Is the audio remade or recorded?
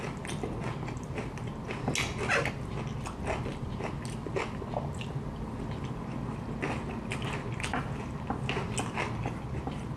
recorded